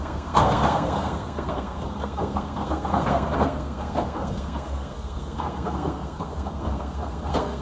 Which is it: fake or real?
fake